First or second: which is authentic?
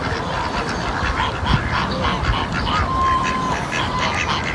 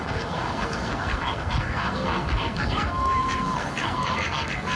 first